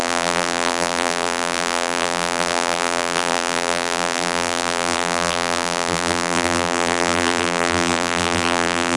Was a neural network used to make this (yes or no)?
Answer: yes